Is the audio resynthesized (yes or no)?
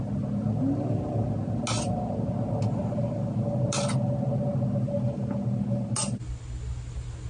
no